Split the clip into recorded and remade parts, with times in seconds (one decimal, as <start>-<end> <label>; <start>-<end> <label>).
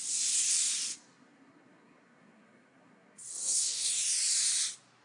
0.0-0.9 recorded; 0.9-3.9 remade; 3.9-5.0 recorded